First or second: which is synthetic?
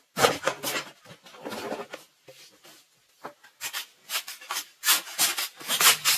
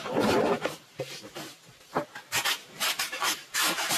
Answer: second